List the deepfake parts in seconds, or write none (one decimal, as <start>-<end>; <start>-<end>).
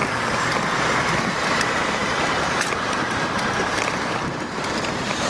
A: 1.3-5.3